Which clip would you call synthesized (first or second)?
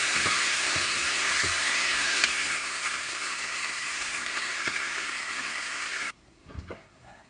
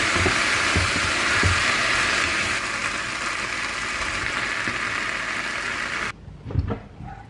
first